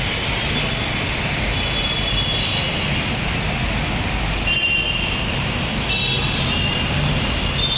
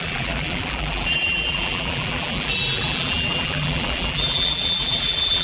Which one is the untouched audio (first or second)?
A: first